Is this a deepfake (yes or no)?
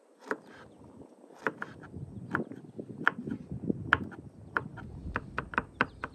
no